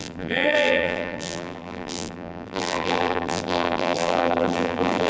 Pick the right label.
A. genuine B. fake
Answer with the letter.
B